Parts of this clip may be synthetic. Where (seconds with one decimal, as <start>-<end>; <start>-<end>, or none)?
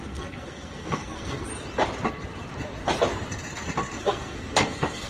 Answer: 0.0-1.5; 4.0-5.1